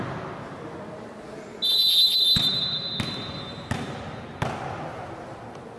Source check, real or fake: real